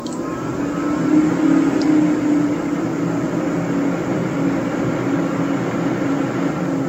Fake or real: real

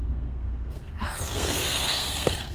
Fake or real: fake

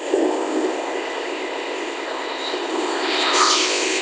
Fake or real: fake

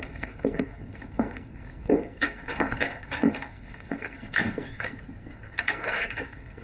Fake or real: fake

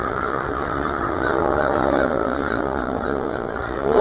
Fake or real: fake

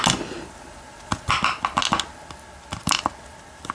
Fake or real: real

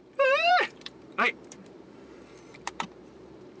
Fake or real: fake